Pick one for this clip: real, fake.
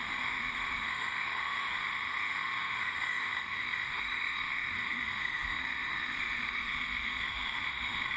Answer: fake